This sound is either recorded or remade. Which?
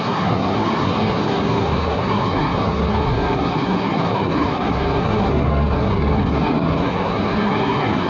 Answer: remade